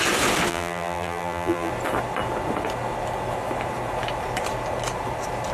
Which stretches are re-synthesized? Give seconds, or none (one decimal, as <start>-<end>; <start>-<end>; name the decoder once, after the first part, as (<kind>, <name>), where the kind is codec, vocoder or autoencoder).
0.5-1.7 (vocoder, BigVGAN v2)